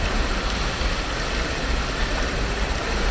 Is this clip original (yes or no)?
yes